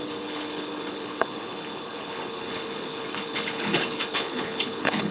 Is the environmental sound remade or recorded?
remade